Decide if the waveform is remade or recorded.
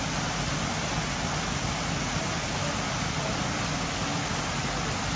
recorded